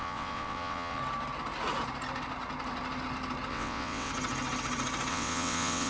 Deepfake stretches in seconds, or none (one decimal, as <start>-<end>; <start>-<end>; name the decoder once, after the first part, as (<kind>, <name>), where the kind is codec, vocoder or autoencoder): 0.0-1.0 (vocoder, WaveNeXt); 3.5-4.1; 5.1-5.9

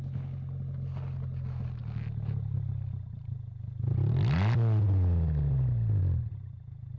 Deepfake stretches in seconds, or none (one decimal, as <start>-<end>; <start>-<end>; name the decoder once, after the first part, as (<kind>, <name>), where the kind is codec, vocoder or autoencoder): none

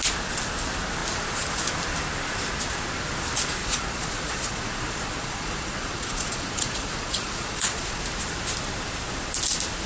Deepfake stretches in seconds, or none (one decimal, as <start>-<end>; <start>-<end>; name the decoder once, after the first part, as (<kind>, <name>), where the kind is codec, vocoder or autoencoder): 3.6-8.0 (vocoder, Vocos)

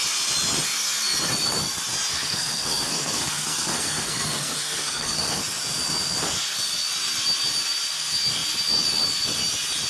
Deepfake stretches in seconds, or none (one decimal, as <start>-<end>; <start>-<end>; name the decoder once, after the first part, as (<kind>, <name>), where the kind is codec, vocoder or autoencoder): 2.1-5.4 (codec, SNAC)

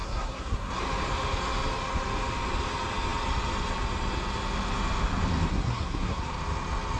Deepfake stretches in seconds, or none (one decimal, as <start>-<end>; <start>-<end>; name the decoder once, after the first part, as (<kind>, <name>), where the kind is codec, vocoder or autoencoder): 0.0-0.8 (codec, SNAC); 5.5-6.2

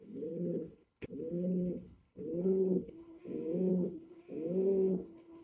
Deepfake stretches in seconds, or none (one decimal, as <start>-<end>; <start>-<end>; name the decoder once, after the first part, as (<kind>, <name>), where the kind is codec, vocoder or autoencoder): 0.0-3.2 (codec, HILCodec); 3.7-4.2; 4.9-5.4

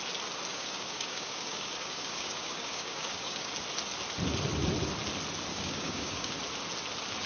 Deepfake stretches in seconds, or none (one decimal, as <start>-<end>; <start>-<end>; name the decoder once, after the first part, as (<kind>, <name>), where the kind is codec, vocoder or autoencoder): 0.5-3.5 (codec, DAC); 5.5-6.3